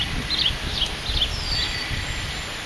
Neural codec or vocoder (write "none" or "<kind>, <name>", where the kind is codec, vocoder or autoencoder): none